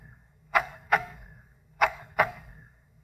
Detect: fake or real fake